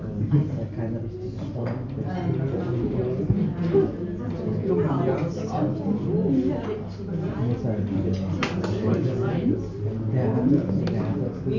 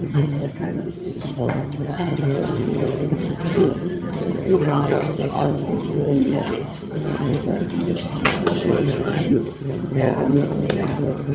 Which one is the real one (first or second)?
first